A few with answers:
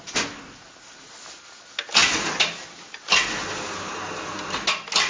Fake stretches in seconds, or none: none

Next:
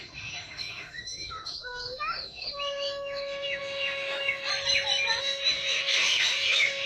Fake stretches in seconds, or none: 0.0-4.5 (autoencoder, DAC-VAE); 5.2-6.9

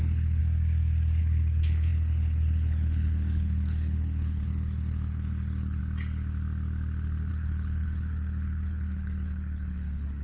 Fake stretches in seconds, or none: 0.0-0.4 (codec, HILCodec); 1.2-5.8; 7.3-10.2

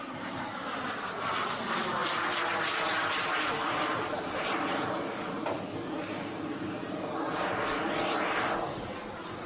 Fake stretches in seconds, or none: none